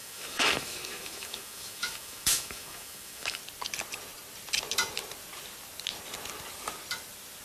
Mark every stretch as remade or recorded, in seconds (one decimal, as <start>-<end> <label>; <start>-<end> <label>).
0.0-3.4 remade; 3.4-7.4 recorded